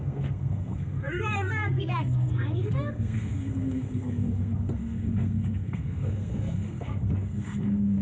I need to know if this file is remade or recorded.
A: remade